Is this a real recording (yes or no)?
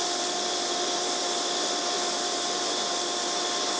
no